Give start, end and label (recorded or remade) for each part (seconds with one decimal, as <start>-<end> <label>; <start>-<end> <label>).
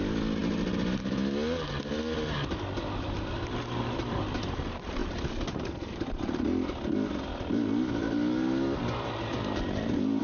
0.0-10.2 recorded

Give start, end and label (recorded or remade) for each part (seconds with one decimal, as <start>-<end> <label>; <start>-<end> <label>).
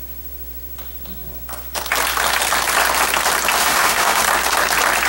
0.0-3.6 recorded; 3.6-4.2 remade; 4.2-5.1 recorded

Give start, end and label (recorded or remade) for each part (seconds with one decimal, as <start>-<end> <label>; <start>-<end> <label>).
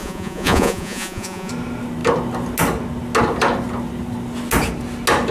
0.0-1.5 remade; 1.5-5.3 recorded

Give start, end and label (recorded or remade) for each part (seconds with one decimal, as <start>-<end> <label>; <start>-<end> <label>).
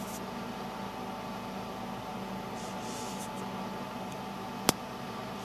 0.0-5.4 recorded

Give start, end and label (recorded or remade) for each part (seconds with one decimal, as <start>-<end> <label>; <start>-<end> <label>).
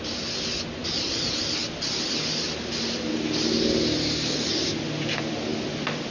0.0-6.1 recorded